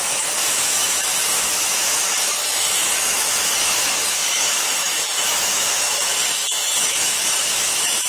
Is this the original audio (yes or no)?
no